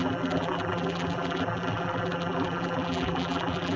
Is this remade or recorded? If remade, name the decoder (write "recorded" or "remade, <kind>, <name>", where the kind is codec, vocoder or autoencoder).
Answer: remade, vocoder, BigVGAN v2